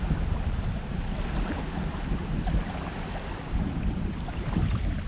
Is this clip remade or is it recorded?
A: recorded